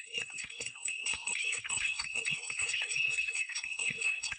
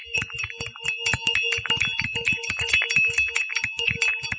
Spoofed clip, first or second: first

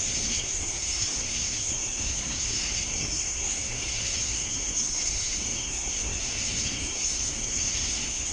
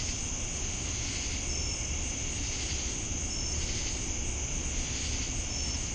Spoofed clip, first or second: first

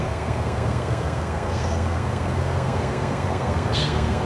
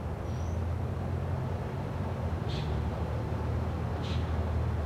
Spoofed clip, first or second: first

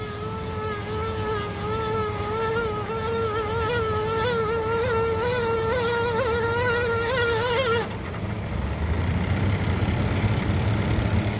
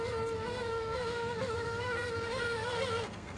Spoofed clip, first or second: second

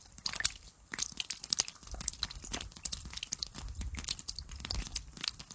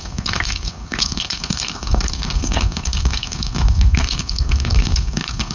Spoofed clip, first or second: second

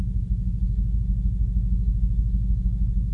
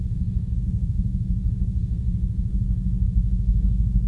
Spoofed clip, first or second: second